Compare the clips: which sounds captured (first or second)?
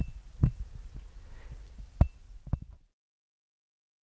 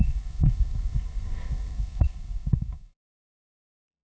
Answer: first